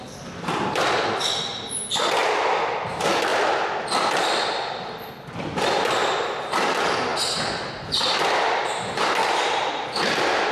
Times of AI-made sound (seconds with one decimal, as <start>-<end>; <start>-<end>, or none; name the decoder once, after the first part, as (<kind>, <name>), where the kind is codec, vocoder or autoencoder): none